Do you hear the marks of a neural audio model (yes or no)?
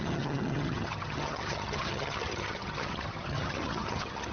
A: yes